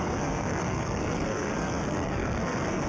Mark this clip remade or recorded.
remade